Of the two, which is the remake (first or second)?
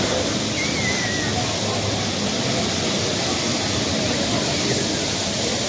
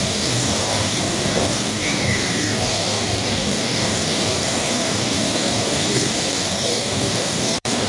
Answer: second